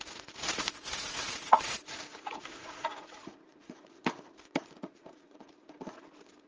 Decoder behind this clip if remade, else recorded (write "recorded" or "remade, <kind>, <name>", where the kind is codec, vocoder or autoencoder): remade, vocoder, Vocos